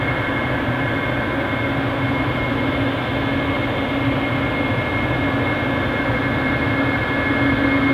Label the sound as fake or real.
real